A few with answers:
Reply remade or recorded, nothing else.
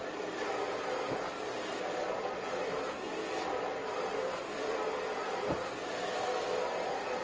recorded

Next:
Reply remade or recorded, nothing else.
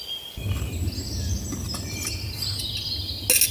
recorded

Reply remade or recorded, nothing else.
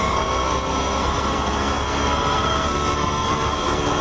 remade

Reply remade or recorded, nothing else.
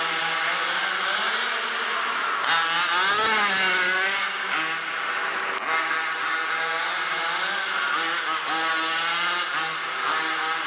recorded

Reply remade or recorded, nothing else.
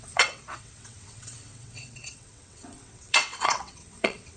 remade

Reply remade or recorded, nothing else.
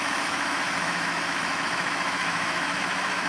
remade